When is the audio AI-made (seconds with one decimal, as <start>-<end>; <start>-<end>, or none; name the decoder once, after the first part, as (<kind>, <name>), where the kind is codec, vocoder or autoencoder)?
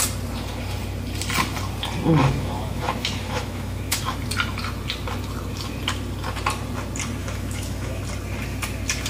2.2-4.0 (autoencoder, DAC-VAE); 7.2-8.0